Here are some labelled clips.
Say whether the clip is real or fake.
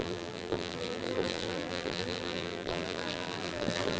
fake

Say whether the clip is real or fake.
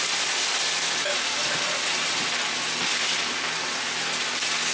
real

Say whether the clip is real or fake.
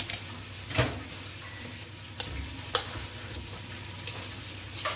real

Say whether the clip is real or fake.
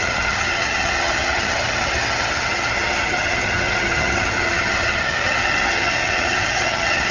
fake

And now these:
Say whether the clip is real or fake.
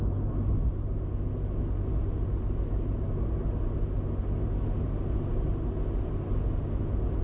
real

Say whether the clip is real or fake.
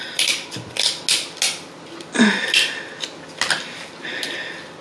real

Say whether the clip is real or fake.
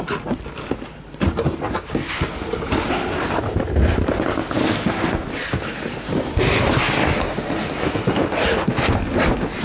real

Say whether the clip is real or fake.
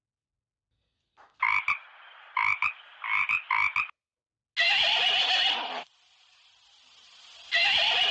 real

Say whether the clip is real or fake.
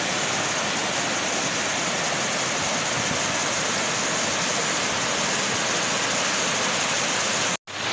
real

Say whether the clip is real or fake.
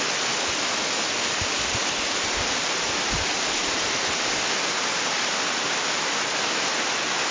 real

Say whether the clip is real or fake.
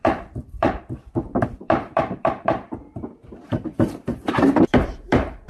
fake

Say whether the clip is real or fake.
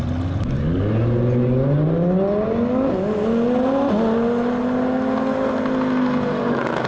real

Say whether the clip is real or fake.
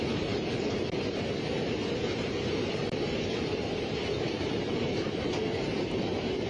fake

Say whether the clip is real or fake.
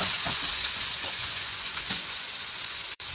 fake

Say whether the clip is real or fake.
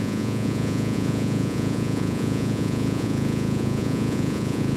fake